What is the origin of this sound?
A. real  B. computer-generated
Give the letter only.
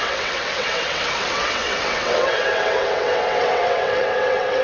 B